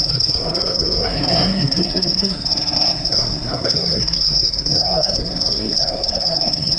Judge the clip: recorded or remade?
remade